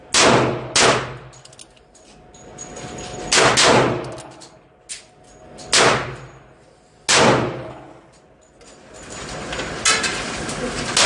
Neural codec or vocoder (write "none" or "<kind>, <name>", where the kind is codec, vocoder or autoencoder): none